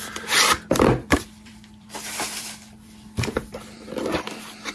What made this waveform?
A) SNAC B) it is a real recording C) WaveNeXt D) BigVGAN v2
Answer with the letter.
D